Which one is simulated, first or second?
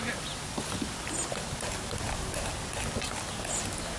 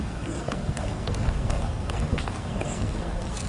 second